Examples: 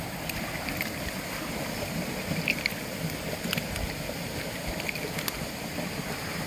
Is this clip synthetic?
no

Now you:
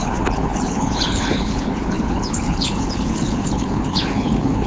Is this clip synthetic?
yes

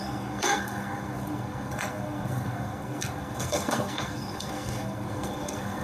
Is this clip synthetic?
yes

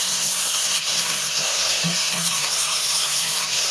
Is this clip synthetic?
yes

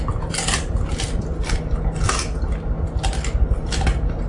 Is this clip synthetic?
no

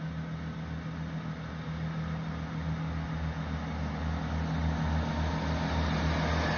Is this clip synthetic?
no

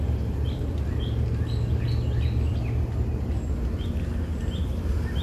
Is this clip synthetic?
no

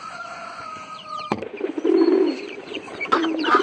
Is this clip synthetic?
yes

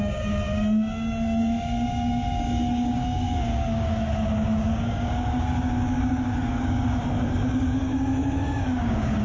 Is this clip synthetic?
yes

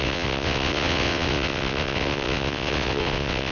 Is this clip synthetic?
yes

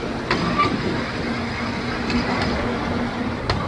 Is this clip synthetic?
no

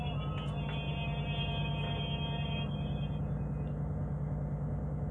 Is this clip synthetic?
no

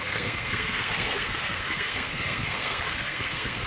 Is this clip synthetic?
yes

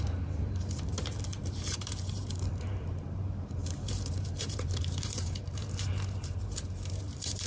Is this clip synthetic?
yes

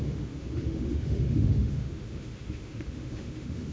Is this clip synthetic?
yes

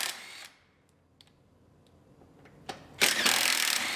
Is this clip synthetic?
no